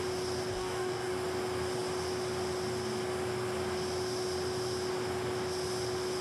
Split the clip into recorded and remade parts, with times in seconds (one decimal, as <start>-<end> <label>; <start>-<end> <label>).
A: 0.0-0.5 recorded; 0.5-1.1 remade; 1.1-6.2 recorded